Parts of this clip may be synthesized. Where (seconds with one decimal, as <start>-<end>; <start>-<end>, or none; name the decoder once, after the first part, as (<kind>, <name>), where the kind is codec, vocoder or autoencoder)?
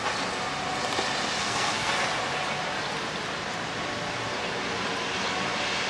1.4-1.9 (codec, SNAC)